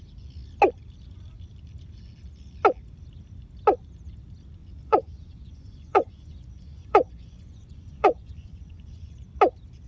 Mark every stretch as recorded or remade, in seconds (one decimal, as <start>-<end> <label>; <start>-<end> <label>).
0.0-4.6 recorded; 4.6-9.1 remade; 9.1-9.9 recorded